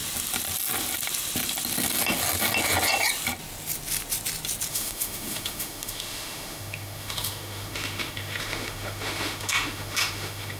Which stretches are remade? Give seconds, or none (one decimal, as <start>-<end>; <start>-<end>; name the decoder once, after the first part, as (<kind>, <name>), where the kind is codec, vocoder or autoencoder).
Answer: 4.7-10.6 (autoencoder, DAC-VAE)